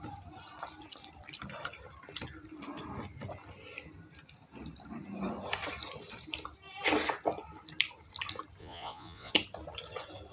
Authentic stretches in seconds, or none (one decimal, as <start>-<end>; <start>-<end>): 0.0-8.6; 9.3-10.3